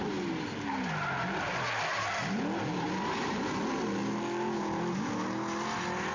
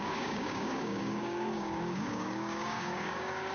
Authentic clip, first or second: first